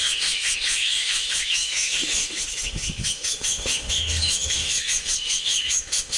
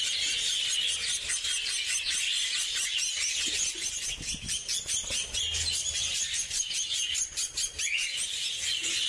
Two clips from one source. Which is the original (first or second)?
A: second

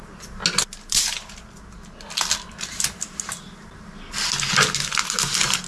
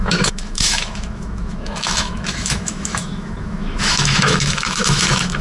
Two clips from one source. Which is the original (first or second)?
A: first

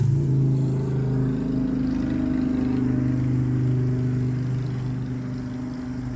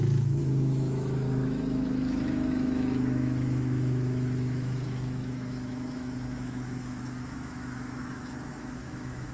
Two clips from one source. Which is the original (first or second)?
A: first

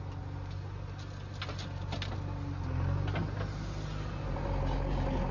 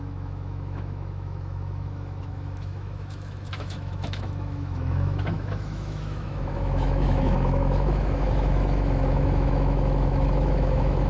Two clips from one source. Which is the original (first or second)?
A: first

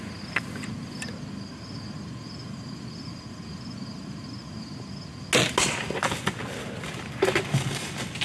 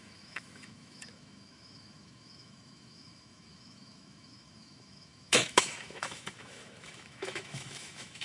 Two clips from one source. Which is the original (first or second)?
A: first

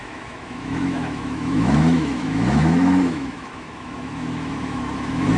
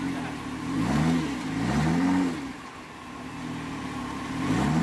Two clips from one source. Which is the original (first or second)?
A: second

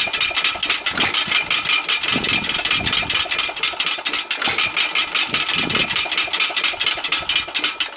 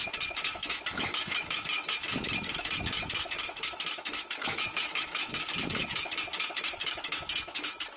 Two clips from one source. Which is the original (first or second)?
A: first